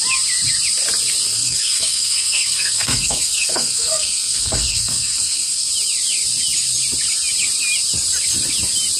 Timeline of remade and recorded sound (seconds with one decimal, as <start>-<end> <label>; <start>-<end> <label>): 0.0-1.2 recorded; 1.2-5.7 remade; 5.7-9.0 recorded